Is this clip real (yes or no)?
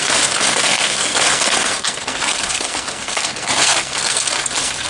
no